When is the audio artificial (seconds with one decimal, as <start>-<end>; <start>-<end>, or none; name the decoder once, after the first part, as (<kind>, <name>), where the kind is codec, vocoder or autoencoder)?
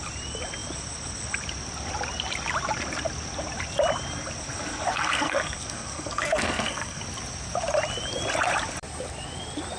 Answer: 4.9-7.0 (codec, SNAC)